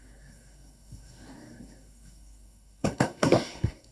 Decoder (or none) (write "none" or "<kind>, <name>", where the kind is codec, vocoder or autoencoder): codec, SNAC